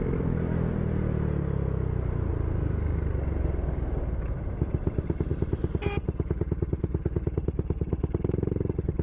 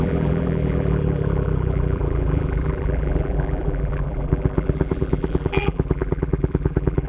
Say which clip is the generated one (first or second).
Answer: second